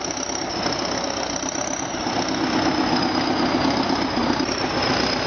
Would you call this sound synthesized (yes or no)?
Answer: no